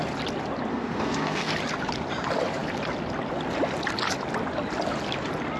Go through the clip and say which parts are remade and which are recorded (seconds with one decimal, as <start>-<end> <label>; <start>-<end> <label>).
0.0-0.7 recorded; 0.7-1.5 remade; 1.5-5.6 recorded